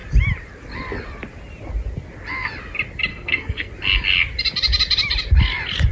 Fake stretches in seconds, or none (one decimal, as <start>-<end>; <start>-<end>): 3.1-3.7